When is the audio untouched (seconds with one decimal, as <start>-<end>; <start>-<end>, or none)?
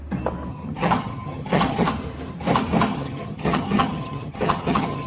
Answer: 0.0-0.5; 1.9-2.9